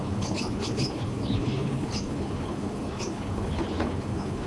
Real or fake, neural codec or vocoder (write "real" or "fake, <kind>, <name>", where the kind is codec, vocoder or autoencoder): fake, codec, HILCodec